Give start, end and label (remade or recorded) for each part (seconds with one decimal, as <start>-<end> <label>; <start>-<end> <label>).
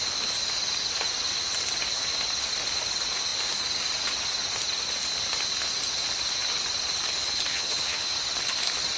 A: 0.0-7.5 recorded; 7.5-8.1 remade; 8.1-9.0 recorded